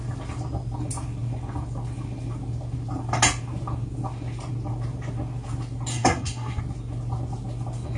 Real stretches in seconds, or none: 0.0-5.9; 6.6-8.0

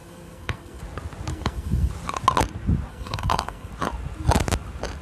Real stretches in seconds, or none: 0.8-1.3; 1.9-2.9; 3.7-5.0

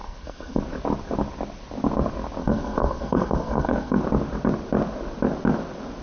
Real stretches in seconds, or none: 0.6-2.4; 4.0-6.0

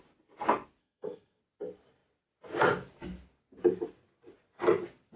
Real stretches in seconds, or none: 0.0-0.8; 1.4-5.2

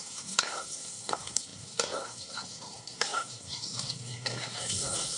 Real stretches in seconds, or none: none

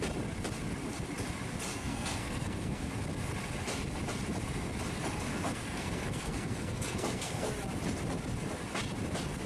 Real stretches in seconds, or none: 0.0-1.7; 2.9-5.3; 7.5-9.5

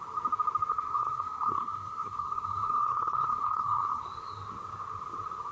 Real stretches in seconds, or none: 0.0-0.7; 4.0-5.5

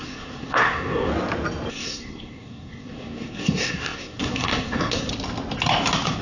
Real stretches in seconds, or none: 1.1-1.7; 5.1-6.2